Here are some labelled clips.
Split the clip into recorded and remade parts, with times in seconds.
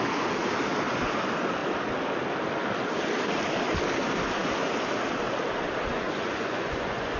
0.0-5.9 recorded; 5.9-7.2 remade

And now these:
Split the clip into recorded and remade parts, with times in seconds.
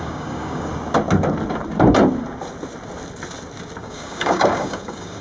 0.0-0.7 remade; 0.7-3.8 recorded; 3.8-5.2 remade